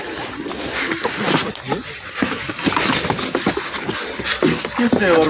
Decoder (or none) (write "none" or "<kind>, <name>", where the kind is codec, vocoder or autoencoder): none